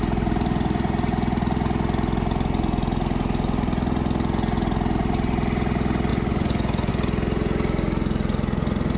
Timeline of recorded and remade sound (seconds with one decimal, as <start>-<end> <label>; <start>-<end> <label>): 0.0-6.1 recorded; 6.1-6.9 remade; 6.9-9.0 recorded